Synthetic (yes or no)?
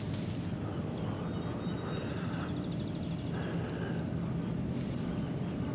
no